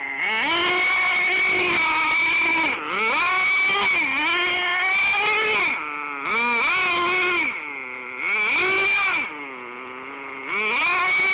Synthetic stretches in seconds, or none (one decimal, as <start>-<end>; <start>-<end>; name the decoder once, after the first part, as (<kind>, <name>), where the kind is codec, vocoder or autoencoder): none